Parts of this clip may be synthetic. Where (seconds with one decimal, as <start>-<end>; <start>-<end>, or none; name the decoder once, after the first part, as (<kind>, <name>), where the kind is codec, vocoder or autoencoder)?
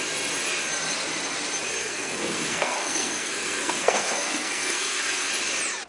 1.8-5.3 (codec, SNAC)